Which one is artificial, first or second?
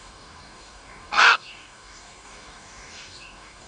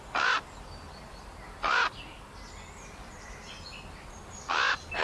first